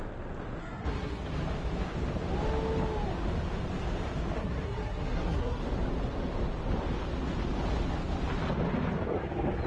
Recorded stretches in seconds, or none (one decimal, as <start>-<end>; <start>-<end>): 0.0-0.6; 1.2-4.4; 5.6-9.7